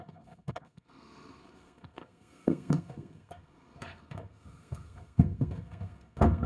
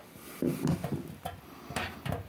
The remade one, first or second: first